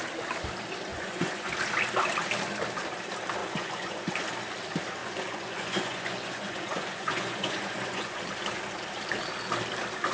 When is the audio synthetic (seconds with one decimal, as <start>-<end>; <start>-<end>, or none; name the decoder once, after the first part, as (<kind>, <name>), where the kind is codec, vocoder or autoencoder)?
0.9-1.5 (vocoder, Vocos); 3.4-4.1; 5.0-8.2